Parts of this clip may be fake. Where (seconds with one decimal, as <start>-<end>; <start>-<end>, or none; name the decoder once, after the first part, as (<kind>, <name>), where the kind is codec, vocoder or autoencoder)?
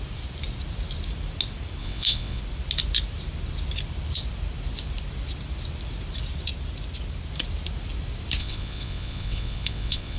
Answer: 1.8-2.4 (vocoder, WaveNeXt); 8.4-10.2